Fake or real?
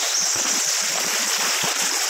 real